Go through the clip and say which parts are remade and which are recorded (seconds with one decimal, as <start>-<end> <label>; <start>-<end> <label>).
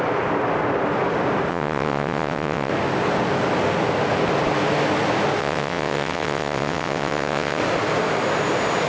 0.0-1.5 recorded; 1.5-2.7 remade; 2.7-5.4 recorded; 5.4-7.6 remade; 7.6-8.9 recorded